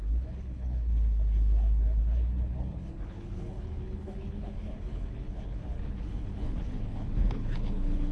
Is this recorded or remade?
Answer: remade